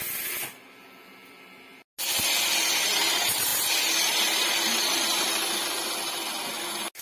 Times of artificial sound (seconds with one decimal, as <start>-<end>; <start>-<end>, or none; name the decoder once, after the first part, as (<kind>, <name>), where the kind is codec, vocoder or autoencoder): none